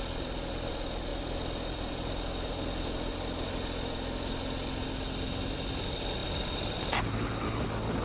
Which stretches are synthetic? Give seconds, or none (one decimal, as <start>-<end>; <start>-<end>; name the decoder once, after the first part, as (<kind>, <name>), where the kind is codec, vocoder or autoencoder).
none